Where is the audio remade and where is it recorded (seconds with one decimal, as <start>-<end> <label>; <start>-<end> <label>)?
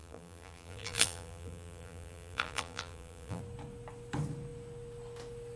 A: 0.0-3.4 remade; 3.4-5.6 recorded